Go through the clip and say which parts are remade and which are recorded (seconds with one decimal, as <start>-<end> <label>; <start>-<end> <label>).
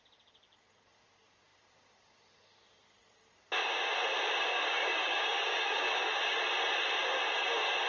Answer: 0.0-4.5 recorded; 4.5-6.2 remade; 6.2-7.9 recorded